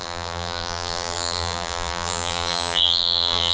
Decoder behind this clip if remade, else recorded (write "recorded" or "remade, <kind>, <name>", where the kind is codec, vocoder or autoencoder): remade, vocoder, BigVGAN v2